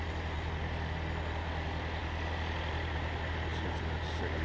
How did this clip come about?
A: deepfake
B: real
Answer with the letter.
B